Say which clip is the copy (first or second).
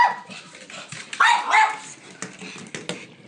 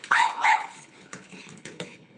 second